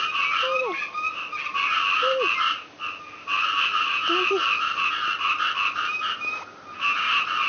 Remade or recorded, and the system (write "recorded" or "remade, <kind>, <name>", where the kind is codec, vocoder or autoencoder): recorded